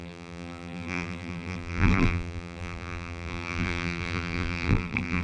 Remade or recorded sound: remade